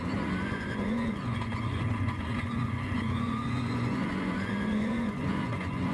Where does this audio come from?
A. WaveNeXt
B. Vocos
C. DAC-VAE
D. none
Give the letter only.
B